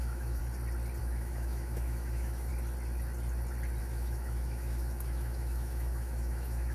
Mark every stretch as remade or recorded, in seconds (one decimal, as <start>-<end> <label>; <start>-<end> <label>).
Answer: 0.0-0.4 remade; 0.4-1.0 recorded; 1.0-2.5 remade; 2.5-3.8 recorded; 3.8-6.7 remade